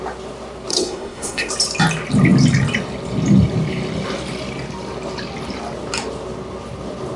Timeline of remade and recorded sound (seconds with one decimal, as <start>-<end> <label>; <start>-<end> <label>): 0.0-0.7 recorded; 0.7-1.5 remade; 1.5-7.2 recorded